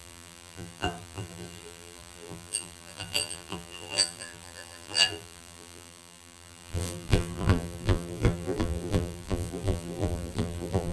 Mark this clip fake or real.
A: fake